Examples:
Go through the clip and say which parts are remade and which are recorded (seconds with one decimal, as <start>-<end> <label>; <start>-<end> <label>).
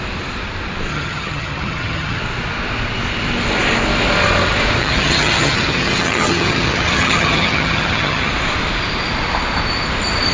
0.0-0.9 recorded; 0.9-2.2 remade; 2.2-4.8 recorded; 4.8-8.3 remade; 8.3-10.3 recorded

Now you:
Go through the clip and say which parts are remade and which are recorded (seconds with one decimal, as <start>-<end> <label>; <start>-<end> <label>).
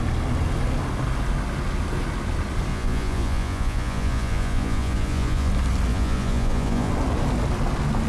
0.0-2.7 recorded; 2.7-5.5 remade; 5.5-5.9 recorded; 5.9-6.9 remade; 6.9-8.1 recorded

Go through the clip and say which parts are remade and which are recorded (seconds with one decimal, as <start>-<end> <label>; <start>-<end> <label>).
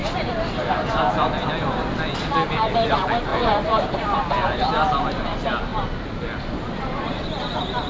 0.0-7.9 remade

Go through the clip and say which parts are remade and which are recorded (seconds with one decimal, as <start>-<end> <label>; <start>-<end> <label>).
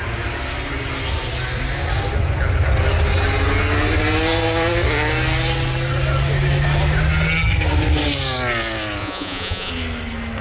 0.0-9.0 recorded; 9.0-9.7 remade; 9.7-10.4 recorded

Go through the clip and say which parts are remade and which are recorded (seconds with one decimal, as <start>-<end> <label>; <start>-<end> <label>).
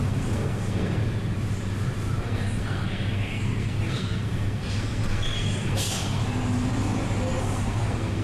0.0-1.0 remade; 1.0-2.2 recorded; 2.2-6.2 remade; 6.2-7.4 recorded; 7.4-8.2 remade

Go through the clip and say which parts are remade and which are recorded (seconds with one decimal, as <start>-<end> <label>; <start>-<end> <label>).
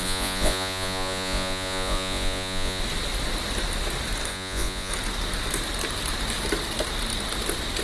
0.0-2.8 remade; 2.8-4.3 recorded; 4.3-4.9 remade; 4.9-7.8 recorded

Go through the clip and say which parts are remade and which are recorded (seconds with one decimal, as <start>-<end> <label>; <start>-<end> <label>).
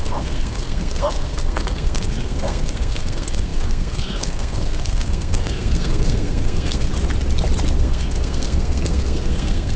0.0-6.9 remade; 6.9-7.8 recorded; 7.8-9.8 remade